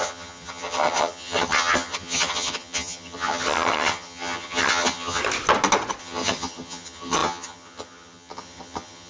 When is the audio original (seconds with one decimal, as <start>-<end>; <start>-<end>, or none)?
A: 5.2-6.0